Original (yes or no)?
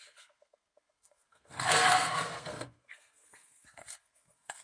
no